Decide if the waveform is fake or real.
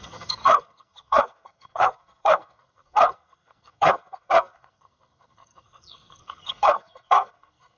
fake